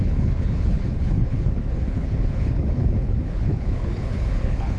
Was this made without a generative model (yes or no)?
no